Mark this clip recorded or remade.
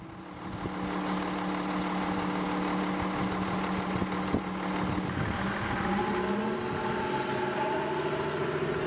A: recorded